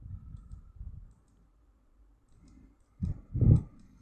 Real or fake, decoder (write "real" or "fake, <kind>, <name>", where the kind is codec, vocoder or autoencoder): fake, vocoder, BigVGAN v2